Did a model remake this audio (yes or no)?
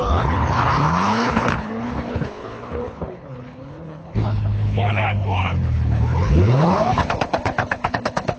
yes